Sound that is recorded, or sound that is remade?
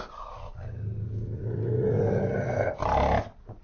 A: recorded